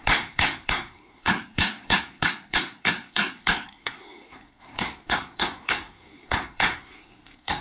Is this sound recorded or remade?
remade